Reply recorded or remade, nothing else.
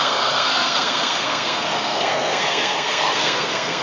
remade